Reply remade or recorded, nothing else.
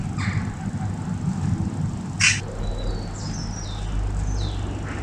recorded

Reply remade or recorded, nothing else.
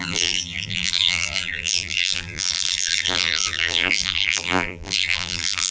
remade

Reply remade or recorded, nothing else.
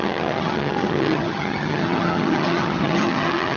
remade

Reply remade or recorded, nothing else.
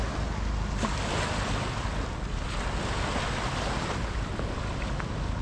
recorded